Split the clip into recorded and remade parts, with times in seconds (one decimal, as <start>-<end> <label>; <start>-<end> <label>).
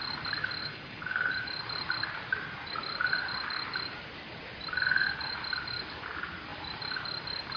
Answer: 0.0-0.6 recorded; 0.6-1.3 remade; 1.3-7.6 recorded